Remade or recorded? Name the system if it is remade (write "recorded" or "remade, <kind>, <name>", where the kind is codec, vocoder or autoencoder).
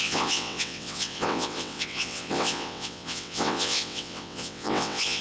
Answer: remade, vocoder, WaveNeXt